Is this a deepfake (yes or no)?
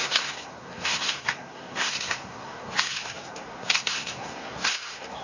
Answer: yes